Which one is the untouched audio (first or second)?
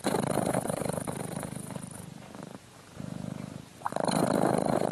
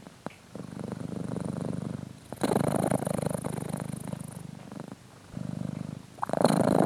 second